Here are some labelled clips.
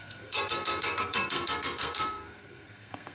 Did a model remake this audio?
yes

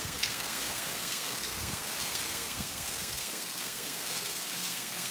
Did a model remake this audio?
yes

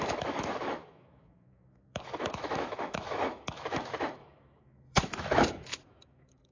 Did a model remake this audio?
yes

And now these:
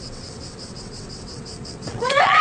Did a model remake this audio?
yes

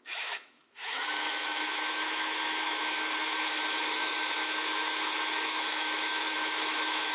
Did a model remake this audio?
yes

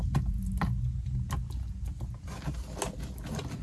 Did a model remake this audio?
no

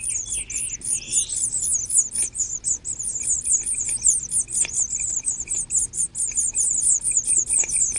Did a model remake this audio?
no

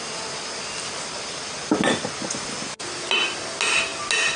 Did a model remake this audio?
no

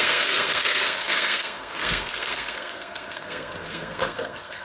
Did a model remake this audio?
yes